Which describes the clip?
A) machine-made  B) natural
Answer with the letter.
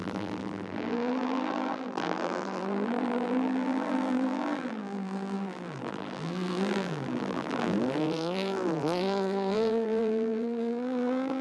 A